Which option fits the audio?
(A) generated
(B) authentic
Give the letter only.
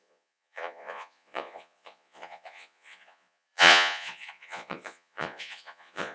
A